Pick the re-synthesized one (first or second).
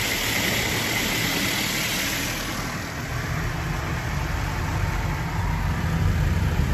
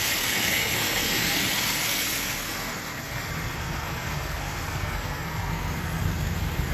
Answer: second